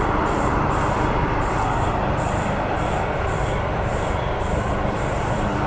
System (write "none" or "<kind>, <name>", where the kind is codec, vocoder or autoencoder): vocoder, BigVGAN v2